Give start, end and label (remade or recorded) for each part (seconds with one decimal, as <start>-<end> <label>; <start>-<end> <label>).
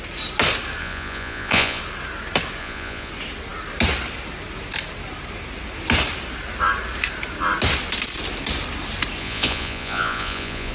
0.0-0.8 recorded; 0.8-1.8 remade; 1.8-2.6 recorded; 2.6-3.1 remade; 3.1-9.2 recorded; 9.2-10.7 remade